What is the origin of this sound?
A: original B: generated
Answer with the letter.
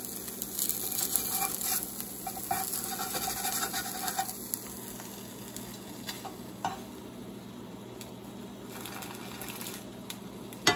A